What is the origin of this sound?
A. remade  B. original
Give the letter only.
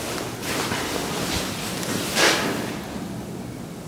B